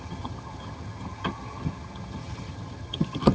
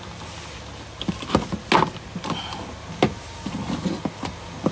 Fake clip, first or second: first